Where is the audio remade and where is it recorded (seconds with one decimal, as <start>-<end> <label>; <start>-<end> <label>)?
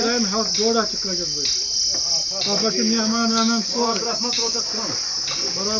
0.0-2.6 recorded; 2.6-4.6 remade; 4.6-5.8 recorded